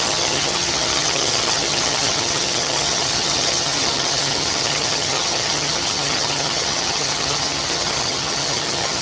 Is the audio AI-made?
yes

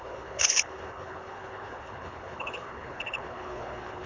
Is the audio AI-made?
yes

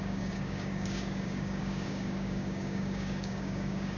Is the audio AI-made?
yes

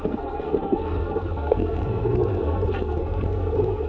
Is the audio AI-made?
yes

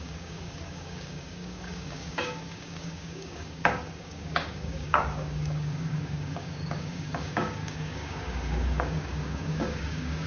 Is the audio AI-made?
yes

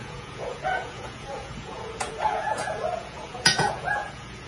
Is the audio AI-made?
yes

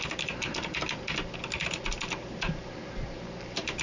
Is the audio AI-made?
no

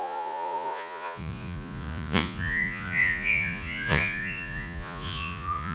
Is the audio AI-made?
yes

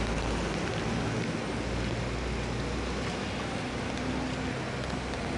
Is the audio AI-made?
no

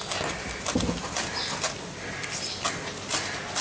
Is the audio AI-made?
no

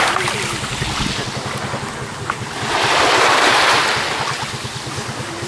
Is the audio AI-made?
no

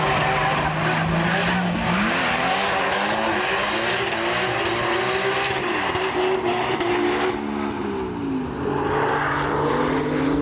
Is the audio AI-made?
no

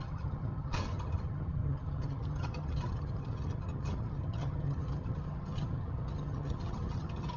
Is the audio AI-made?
yes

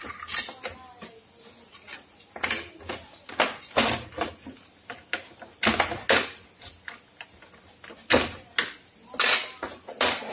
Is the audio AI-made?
no